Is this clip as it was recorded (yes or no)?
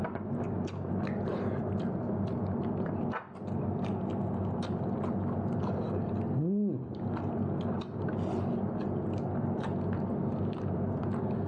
yes